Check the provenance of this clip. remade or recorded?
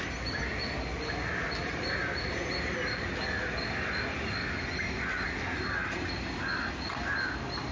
recorded